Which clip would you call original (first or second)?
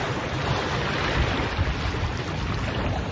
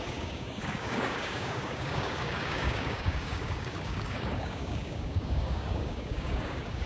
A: first